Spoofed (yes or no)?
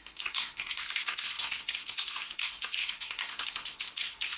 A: yes